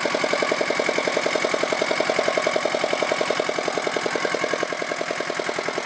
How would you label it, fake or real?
real